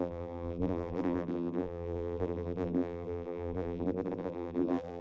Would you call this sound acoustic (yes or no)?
no